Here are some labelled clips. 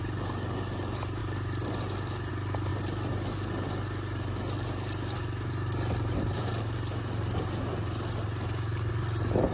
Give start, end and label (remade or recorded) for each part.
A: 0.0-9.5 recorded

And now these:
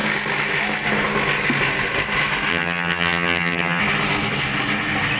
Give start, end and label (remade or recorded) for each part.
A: 0.0-2.5 recorded; 2.5-3.8 remade; 3.8-5.2 recorded

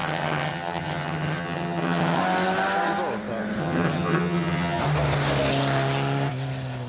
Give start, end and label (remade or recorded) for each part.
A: 0.0-2.2 remade; 2.2-3.6 recorded; 3.6-4.8 remade; 4.8-6.9 recorded

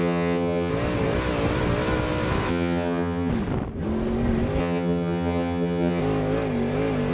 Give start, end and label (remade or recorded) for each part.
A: 0.0-0.7 remade; 0.7-2.5 recorded; 2.5-3.3 remade; 3.3-4.6 recorded; 4.6-6.0 remade; 6.0-7.1 recorded

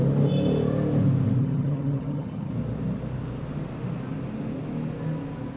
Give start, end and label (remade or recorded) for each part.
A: 0.0-1.4 recorded; 1.4-2.5 remade; 2.5-5.6 recorded